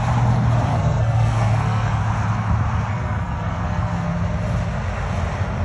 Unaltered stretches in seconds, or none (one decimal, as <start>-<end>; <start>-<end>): 0.0-0.7; 2.0-2.9; 4.1-5.6